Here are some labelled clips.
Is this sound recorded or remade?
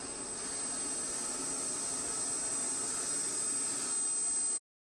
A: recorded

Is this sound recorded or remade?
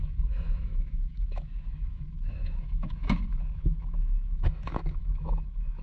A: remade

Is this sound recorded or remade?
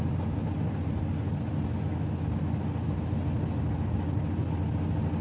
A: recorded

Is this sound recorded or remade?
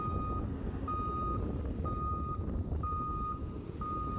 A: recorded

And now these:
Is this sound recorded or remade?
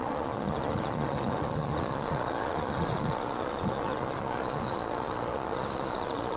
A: remade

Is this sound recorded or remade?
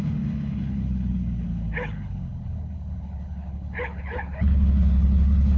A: remade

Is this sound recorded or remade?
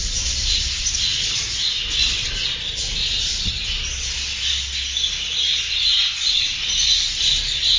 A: recorded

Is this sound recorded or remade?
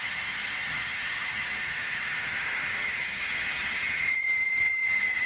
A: remade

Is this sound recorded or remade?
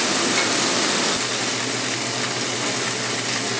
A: recorded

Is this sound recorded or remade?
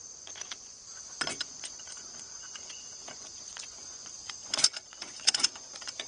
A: remade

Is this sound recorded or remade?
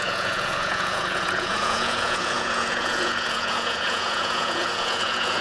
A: remade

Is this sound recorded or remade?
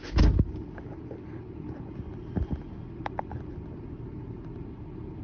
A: recorded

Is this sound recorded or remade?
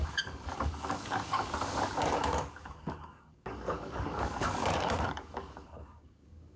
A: remade